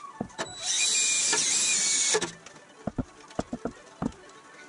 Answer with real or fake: real